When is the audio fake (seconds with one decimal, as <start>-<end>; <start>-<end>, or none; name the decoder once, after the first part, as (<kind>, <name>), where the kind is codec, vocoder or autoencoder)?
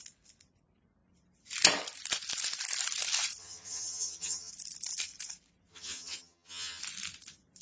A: 3.4-4.5 (vocoder, HiFi-GAN); 5.7-6.8